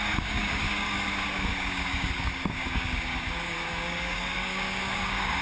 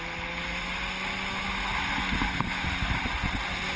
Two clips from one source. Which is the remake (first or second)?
first